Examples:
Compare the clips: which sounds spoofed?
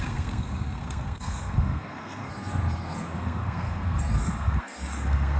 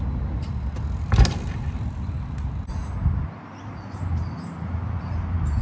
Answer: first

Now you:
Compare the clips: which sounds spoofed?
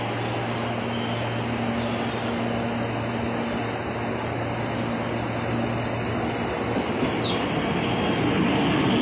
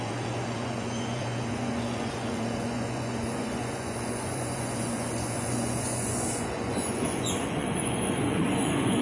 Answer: second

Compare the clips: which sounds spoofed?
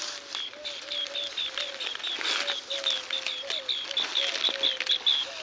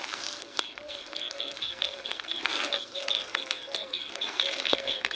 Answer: second